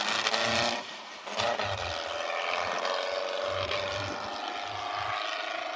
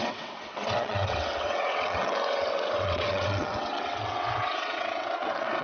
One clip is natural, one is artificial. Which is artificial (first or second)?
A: second